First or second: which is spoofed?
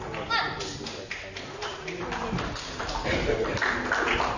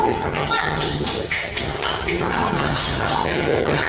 second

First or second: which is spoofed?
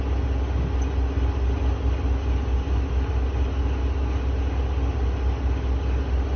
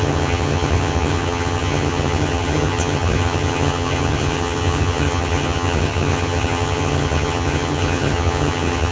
second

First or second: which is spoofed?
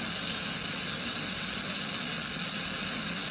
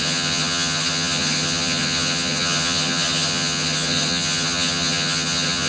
second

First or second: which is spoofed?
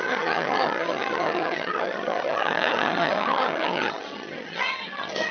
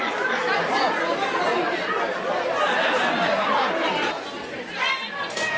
first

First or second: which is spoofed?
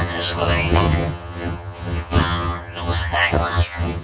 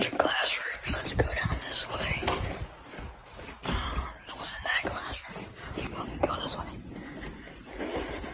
first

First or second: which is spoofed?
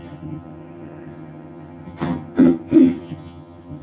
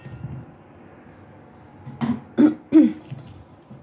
first